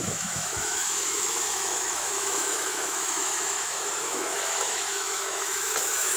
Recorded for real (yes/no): no